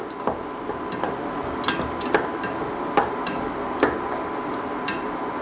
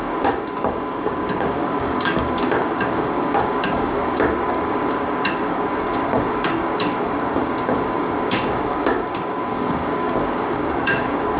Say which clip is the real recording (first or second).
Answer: first